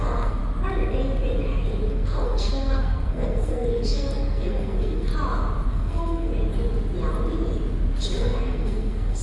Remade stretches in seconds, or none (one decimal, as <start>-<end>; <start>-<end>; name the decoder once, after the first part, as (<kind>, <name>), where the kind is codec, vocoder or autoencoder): 0.0-0.4 (codec, SNAC); 1.9-5.1; 5.7-6.3; 8.2-9.2